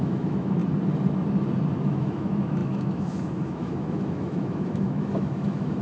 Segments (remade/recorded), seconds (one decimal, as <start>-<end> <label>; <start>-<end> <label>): 0.0-0.6 remade; 0.6-1.8 recorded; 1.8-5.8 remade